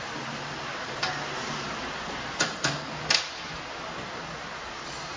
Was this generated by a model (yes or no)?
no